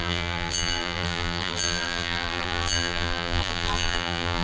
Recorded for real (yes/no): no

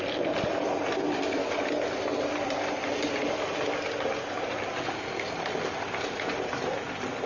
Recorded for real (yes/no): yes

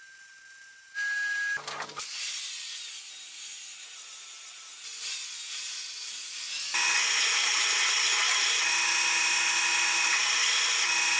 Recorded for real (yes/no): yes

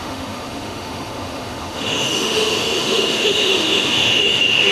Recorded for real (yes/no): no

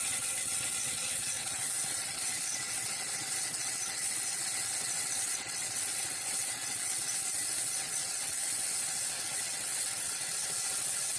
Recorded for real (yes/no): no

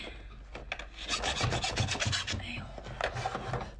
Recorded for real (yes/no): yes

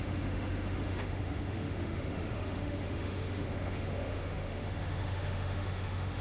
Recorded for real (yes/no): no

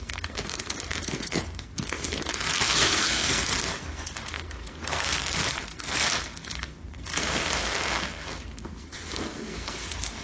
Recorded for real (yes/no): no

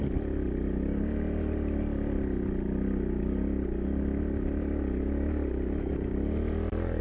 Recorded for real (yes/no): yes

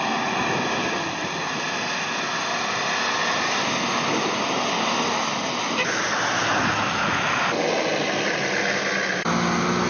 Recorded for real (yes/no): yes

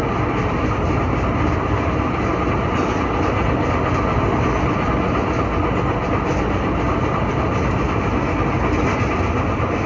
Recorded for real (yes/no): yes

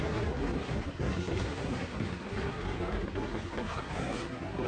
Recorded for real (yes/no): no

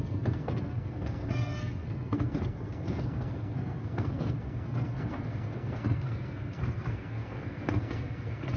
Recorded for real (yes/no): no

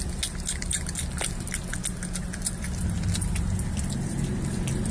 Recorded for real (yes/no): yes